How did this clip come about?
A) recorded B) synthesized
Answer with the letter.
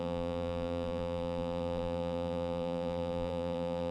B